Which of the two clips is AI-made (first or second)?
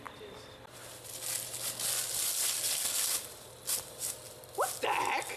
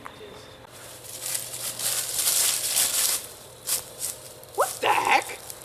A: second